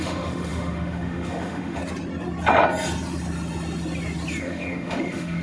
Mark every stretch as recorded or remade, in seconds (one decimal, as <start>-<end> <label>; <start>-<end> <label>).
0.0-1.8 remade; 1.8-4.4 recorded; 4.4-5.4 remade

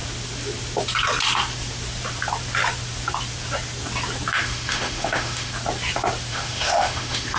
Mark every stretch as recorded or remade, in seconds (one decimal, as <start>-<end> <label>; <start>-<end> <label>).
0.0-4.4 recorded; 4.4-5.5 remade; 5.5-6.3 recorded; 6.3-7.4 remade

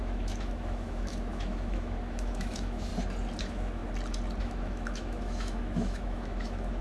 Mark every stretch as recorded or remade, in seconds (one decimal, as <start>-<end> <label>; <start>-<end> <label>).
0.0-2.9 remade; 2.9-3.4 recorded; 3.4-3.8 remade; 3.8-4.4 recorded; 4.4-6.8 remade

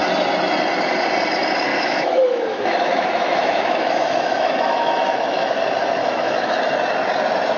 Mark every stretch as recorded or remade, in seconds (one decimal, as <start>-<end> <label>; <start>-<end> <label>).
0.0-1.7 recorded; 1.7-5.6 remade; 5.6-6.0 recorded; 6.0-6.6 remade; 6.6-7.6 recorded

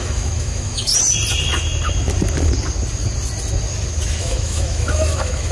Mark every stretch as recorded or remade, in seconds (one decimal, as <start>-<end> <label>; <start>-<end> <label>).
0.0-0.9 remade; 0.9-4.2 recorded; 4.2-5.5 remade

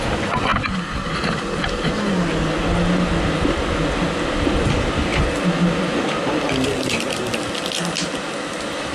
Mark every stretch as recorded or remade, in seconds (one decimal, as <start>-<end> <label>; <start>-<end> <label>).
0.0-8.9 recorded

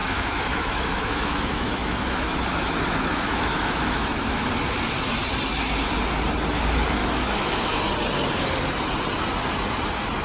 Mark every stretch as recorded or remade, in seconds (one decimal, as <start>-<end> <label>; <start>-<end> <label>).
0.0-4.5 remade; 4.5-7.0 recorded; 7.0-7.8 remade; 7.8-10.2 recorded